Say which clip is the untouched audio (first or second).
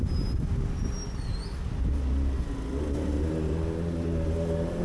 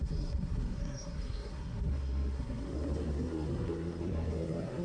first